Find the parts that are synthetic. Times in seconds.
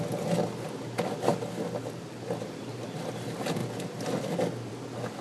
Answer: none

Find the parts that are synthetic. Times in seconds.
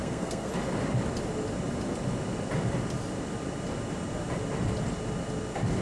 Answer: 0.0-0.5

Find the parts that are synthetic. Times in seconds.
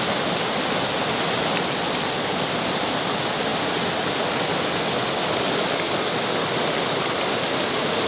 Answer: none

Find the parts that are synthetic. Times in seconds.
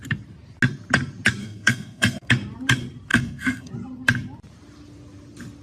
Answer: 1.4-2.3; 3.1-3.7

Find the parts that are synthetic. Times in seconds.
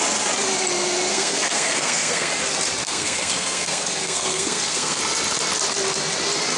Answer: 1.1-2.3; 2.8-5.0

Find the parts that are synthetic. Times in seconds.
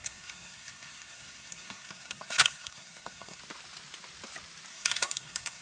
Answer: 0.0-3.4; 4.7-5.6